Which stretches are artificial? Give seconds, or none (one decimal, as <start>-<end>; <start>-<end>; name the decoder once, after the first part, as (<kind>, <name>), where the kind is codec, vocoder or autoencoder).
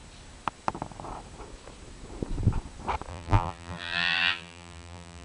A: 3.1-5.2 (vocoder, BigVGAN v2)